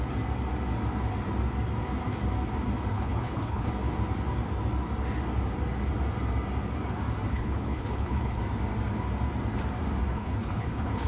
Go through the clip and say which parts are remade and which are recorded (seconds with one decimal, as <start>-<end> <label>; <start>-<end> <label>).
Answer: 0.0-2.9 recorded; 2.9-3.7 remade; 3.7-7.3 recorded; 7.3-8.4 remade; 8.4-10.1 recorded; 10.1-11.1 remade